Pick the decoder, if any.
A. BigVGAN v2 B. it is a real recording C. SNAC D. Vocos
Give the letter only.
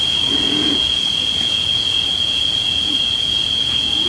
D